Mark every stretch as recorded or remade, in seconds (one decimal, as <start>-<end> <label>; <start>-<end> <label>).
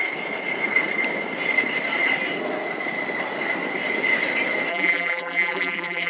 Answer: 0.0-4.7 recorded; 4.7-6.1 remade